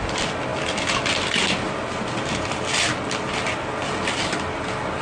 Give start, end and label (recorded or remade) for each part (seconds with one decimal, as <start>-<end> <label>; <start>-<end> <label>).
0.0-5.0 recorded